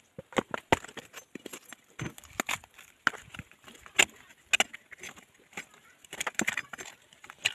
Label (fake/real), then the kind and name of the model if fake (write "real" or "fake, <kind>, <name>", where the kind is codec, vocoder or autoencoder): real